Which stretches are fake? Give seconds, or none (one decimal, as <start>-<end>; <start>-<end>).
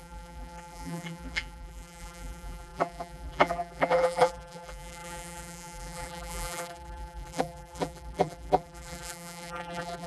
0.0-10.1